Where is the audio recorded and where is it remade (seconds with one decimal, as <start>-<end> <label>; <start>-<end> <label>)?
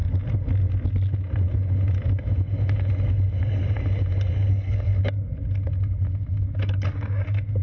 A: 0.0-4.5 recorded; 4.5-5.0 remade; 5.0-7.6 recorded